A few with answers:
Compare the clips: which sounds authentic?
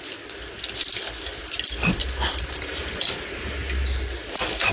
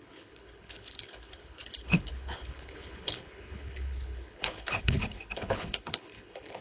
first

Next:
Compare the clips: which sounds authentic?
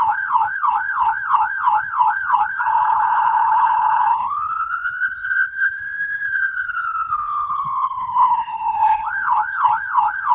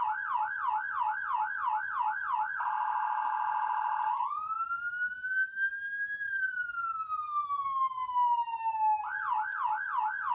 second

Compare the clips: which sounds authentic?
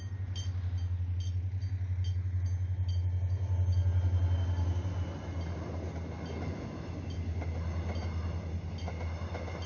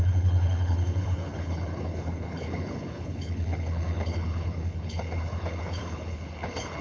first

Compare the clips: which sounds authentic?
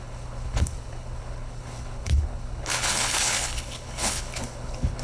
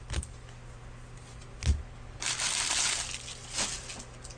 second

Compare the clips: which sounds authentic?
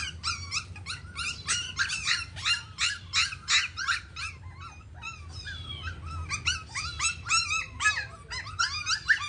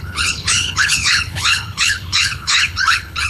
first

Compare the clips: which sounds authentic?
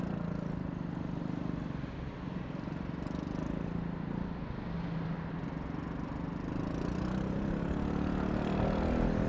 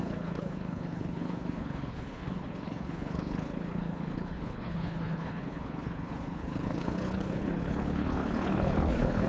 first